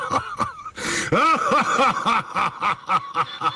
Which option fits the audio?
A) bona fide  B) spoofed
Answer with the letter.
A